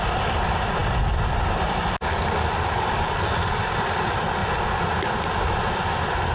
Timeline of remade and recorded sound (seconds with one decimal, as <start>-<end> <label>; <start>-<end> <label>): 0.0-6.3 recorded